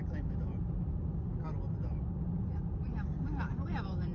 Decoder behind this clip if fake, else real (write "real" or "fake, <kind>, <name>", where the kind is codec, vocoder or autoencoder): real